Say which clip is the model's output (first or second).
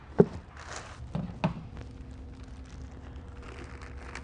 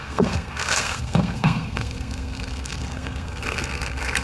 second